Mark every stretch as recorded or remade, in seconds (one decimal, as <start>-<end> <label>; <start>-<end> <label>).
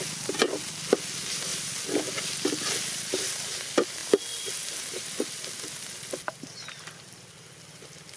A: 0.0-8.2 recorded